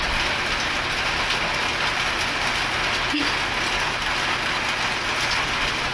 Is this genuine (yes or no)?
yes